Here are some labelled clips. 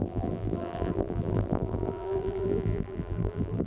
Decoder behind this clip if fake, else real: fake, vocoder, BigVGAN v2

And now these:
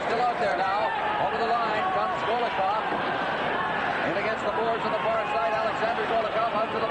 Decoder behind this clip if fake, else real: fake, vocoder, BigVGAN v2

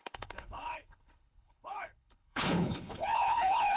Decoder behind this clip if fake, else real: fake, codec, HILCodec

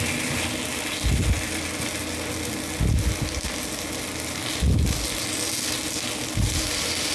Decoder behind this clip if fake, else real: real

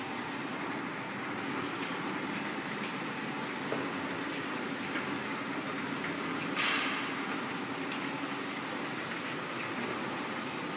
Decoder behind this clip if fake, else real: real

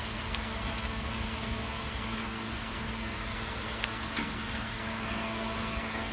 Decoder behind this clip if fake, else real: fake, codec, SNAC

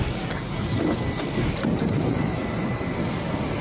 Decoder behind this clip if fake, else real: real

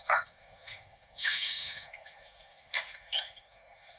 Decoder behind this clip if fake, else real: fake, autoencoder, DAC-VAE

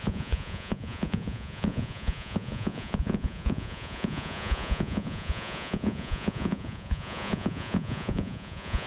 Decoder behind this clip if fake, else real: fake, vocoder, Vocos